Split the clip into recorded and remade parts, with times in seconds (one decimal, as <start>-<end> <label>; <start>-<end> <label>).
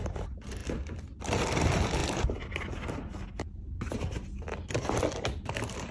0.0-2.0 remade; 2.0-5.5 recorded; 5.5-5.9 remade